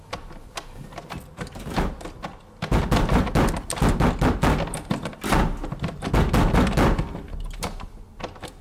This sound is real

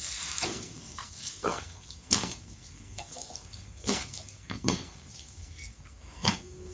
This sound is fake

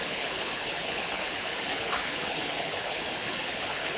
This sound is fake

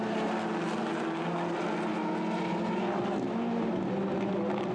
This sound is real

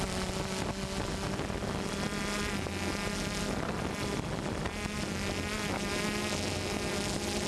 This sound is real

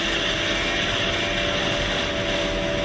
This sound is real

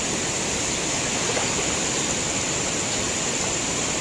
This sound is real